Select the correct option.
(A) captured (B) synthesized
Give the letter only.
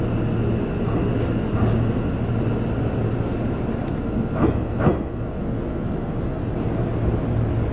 A